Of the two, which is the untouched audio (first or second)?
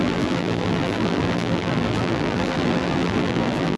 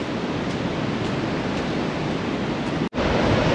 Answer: second